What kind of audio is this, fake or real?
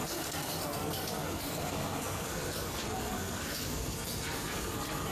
fake